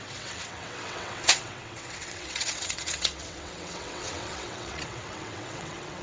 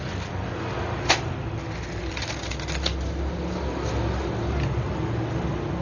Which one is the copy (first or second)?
first